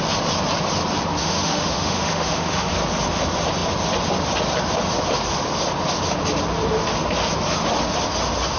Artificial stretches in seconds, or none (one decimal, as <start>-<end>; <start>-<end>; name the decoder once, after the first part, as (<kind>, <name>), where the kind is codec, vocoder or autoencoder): 1.2-2.7 (autoencoder, DAC-VAE)